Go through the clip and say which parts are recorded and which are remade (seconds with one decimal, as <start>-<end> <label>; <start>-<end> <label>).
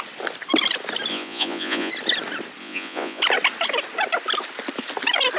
0.0-1.1 recorded; 1.1-1.9 remade; 1.9-2.6 recorded; 2.6-3.2 remade; 3.2-5.4 recorded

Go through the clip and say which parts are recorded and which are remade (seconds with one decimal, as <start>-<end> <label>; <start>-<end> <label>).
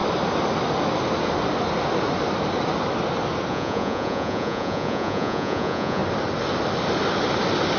0.0-3.5 recorded; 3.5-6.0 remade; 6.0-7.8 recorded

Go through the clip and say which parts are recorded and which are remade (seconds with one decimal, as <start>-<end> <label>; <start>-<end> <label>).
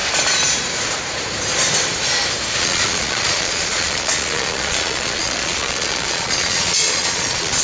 0.0-2.6 recorded; 2.6-7.6 remade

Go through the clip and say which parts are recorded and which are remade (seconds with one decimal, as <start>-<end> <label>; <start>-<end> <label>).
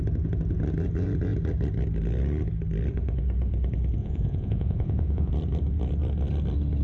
0.0-4.0 recorded; 4.0-5.3 remade; 5.3-6.8 recorded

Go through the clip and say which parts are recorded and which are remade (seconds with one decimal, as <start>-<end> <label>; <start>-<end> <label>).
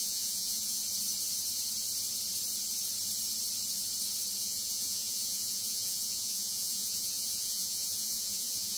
0.0-0.8 remade; 0.8-4.4 recorded; 4.4-8.8 remade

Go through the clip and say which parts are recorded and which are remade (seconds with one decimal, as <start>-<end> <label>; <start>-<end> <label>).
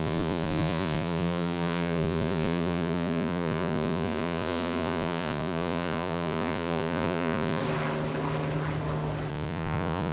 0.0-7.6 remade; 7.6-9.3 recorded; 9.3-10.1 remade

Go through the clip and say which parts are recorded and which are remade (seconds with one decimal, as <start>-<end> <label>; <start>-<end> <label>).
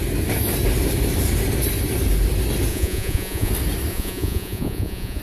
0.0-2.7 recorded; 2.7-3.5 remade; 3.5-3.9 recorded; 3.9-5.2 remade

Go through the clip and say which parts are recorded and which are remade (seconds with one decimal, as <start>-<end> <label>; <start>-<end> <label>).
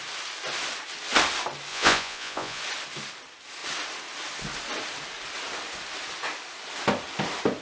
0.0-1.7 recorded; 1.7-2.6 remade; 2.6-7.6 recorded